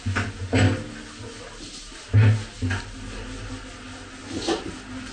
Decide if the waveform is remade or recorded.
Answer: recorded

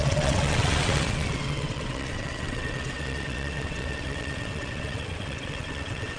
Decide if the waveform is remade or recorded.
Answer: remade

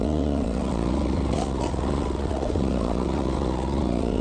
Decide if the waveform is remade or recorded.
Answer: remade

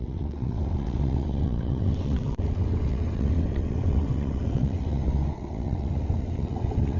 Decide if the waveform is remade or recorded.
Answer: remade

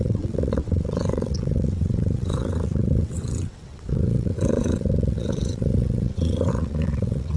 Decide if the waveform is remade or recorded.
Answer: remade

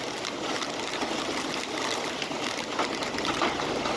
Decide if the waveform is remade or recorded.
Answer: recorded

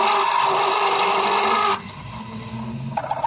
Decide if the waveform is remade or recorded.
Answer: recorded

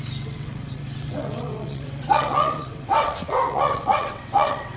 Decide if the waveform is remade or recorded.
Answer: remade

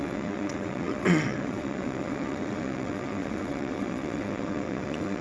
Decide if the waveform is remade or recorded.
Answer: remade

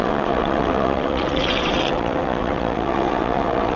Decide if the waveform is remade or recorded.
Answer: remade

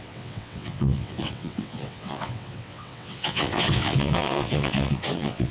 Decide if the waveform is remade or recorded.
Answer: remade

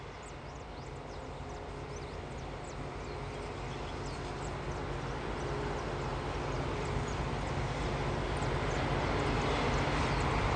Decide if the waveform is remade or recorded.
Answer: recorded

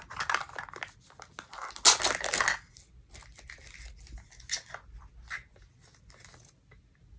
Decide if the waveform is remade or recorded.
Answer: recorded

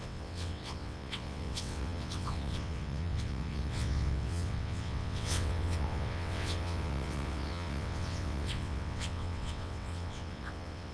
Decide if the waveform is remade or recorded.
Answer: remade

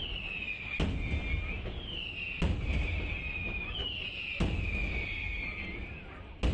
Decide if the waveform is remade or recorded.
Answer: recorded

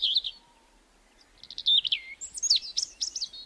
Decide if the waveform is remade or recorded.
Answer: recorded